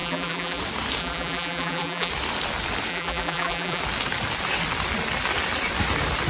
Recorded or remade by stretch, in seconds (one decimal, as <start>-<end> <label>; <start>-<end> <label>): 0.0-0.6 remade; 0.6-1.0 recorded; 1.0-2.1 remade; 2.1-2.9 recorded; 2.9-3.8 remade; 3.8-6.3 recorded